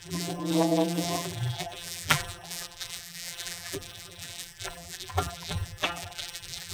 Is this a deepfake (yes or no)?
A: yes